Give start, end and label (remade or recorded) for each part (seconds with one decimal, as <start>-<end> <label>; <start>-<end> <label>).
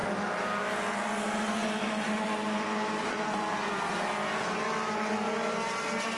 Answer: 0.0-1.6 recorded; 1.6-5.3 remade; 5.3-6.2 recorded